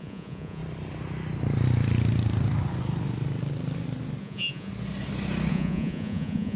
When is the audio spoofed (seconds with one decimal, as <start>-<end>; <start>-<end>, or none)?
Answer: 0.0-0.6; 4.2-4.7; 5.5-6.6